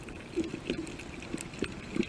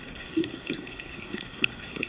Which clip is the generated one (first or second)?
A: second